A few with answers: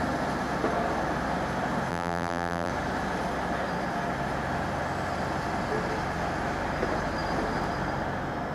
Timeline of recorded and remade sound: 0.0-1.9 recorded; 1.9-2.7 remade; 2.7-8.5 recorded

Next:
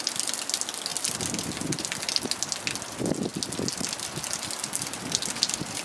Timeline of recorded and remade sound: 0.0-5.8 recorded

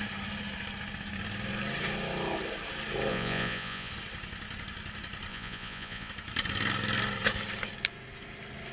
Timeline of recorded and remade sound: 0.0-3.1 recorded; 3.1-3.9 remade; 3.9-5.3 recorded; 5.3-6.1 remade; 6.1-8.7 recorded

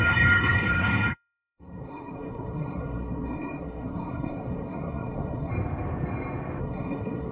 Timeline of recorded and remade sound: 0.0-5.5 remade; 5.5-6.6 recorded; 6.6-7.3 remade

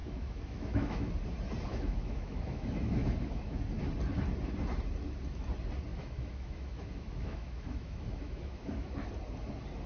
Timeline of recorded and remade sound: 0.0-1.1 remade; 1.1-1.7 recorded; 1.7-3.6 remade; 3.6-5.9 recorded; 5.9-9.1 remade; 9.1-9.9 recorded